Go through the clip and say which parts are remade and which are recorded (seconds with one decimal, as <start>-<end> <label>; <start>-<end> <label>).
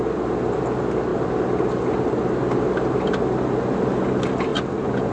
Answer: 0.0-4.5 recorded; 4.5-5.1 remade